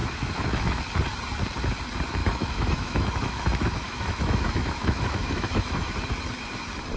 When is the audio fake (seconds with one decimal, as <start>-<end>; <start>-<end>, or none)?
0.0-0.8; 2.2-5.9